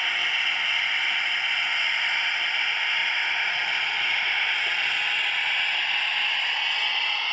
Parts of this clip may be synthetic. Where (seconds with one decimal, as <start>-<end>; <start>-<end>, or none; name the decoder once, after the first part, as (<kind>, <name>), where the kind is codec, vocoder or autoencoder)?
none